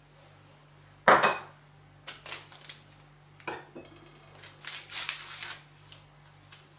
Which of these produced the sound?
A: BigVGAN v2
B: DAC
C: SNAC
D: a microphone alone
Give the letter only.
D